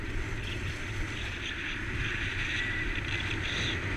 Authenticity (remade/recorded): remade